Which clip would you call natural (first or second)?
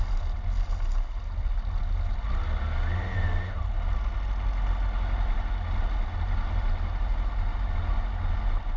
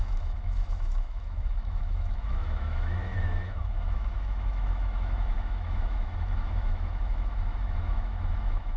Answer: first